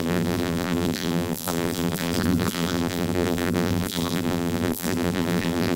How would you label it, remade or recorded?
remade